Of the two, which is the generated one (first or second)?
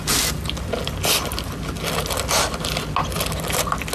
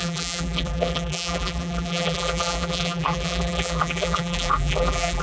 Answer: second